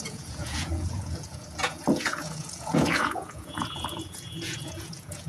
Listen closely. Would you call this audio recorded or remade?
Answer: remade